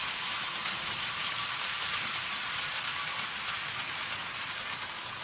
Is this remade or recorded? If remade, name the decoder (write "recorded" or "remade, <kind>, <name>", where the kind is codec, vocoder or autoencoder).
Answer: recorded